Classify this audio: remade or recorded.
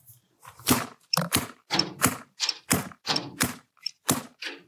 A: remade